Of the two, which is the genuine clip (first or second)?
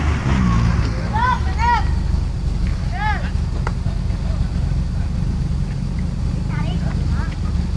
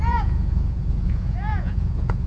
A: first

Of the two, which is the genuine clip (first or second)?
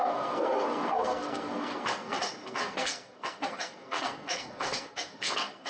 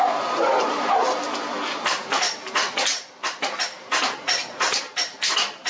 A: second